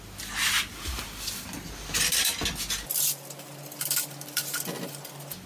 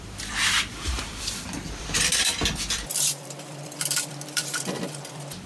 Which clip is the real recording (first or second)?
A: first